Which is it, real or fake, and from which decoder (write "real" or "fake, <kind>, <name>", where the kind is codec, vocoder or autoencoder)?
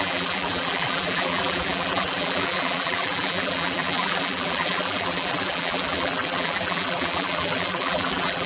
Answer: fake, vocoder, BigVGAN v2